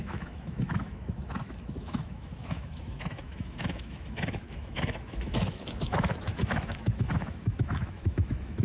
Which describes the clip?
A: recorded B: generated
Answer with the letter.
B